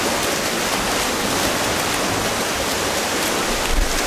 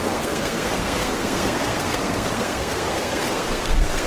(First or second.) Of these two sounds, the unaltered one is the first